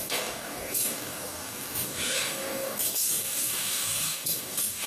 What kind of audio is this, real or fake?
fake